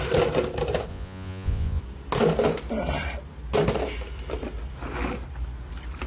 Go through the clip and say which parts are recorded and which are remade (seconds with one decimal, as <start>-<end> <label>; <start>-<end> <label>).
0.0-0.9 recorded; 0.9-1.8 remade; 1.8-6.1 recorded